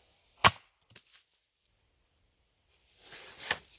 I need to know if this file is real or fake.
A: real